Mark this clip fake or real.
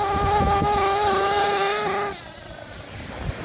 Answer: real